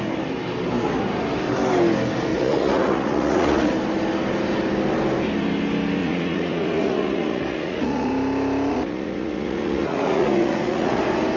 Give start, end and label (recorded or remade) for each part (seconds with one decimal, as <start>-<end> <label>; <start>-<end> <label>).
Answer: 0.0-2.3 recorded; 2.3-3.7 remade; 3.7-6.0 recorded; 6.0-8.1 remade; 8.1-8.7 recorded; 8.7-11.0 remade; 11.0-11.4 recorded